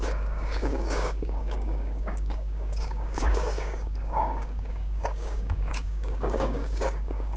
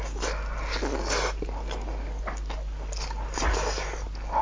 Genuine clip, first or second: second